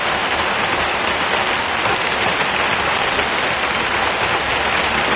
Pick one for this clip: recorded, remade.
recorded